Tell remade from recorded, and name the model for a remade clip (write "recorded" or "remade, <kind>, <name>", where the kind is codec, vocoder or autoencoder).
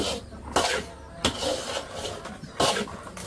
recorded